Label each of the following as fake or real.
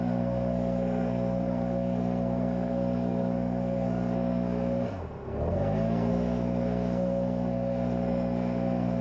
fake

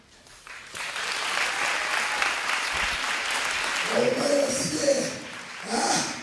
fake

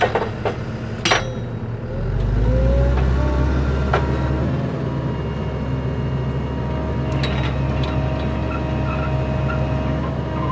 real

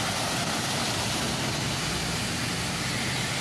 real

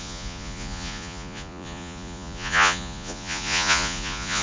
fake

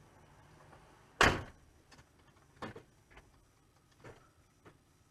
real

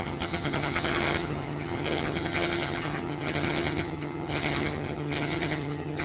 fake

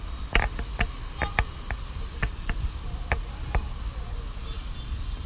real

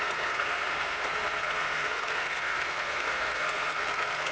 fake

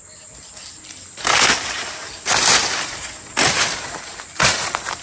real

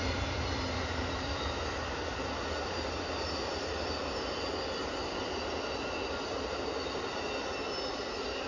real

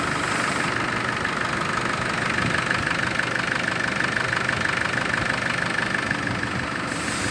real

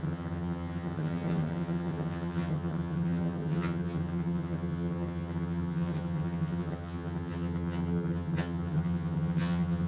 fake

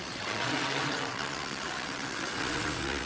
fake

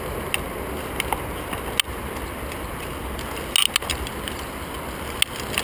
real